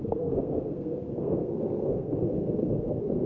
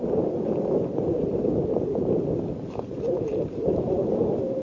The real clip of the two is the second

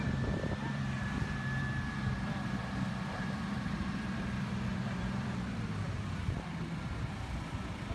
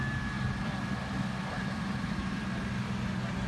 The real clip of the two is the second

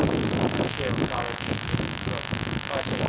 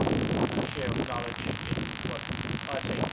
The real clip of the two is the second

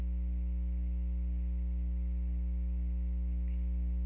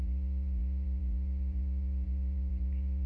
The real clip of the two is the first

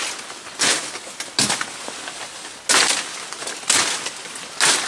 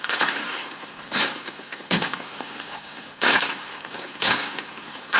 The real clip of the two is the first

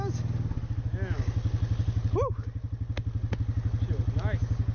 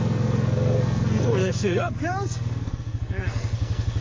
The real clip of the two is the first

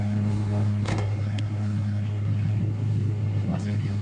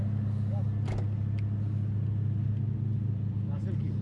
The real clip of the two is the second